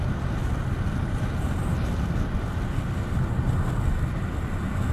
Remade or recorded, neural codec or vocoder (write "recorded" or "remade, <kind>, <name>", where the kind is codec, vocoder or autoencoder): recorded